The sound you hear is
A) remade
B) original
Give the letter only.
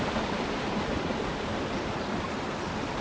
B